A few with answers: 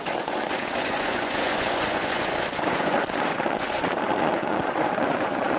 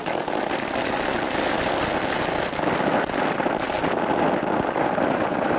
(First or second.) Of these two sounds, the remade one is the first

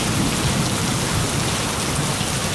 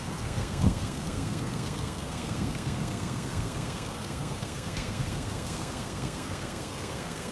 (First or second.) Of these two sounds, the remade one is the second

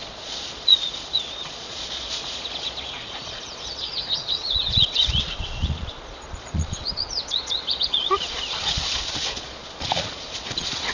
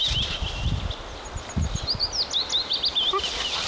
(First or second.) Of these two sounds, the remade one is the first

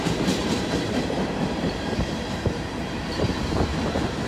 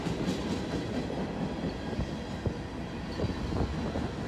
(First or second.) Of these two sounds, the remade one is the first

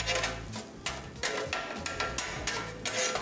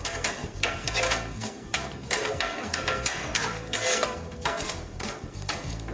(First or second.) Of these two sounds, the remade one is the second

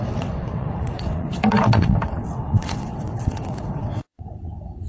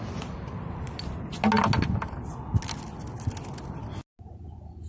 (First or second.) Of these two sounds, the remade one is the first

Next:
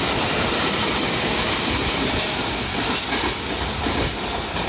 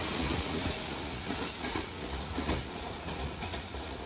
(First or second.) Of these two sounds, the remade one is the second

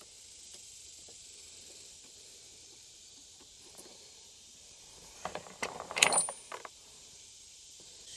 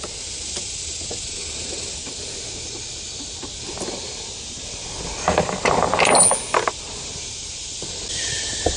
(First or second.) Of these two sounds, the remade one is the first